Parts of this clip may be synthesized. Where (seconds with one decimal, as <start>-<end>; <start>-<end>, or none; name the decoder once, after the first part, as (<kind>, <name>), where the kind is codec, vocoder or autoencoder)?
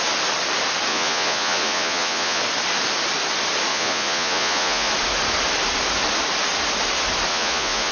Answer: 0.9-2.4 (vocoder, Vocos); 3.7-4.9; 7.3-7.9